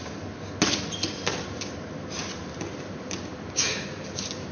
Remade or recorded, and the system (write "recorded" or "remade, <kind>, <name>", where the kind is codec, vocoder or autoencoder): recorded